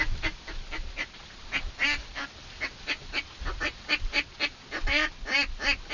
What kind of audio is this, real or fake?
real